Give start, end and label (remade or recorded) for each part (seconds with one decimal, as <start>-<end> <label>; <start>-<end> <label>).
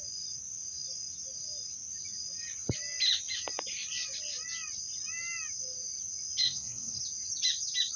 0.0-6.4 recorded; 6.4-7.0 remade; 7.0-8.0 recorded